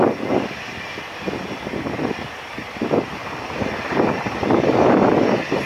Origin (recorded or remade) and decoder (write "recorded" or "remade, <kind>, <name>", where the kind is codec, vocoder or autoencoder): recorded